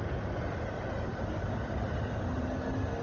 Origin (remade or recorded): recorded